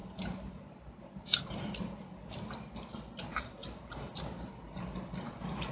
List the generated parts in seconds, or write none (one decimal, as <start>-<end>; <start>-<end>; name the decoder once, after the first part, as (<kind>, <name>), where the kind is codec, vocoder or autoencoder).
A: 0.0-3.4 (vocoder, BigVGAN v2)